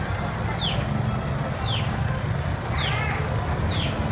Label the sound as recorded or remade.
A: recorded